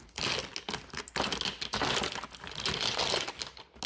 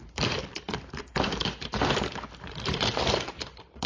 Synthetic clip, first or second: second